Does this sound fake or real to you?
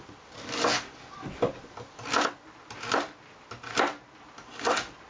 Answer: real